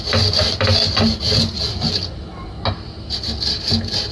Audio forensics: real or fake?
real